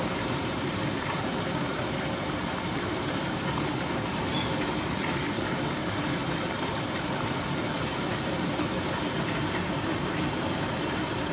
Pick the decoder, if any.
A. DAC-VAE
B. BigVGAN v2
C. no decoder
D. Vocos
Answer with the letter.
B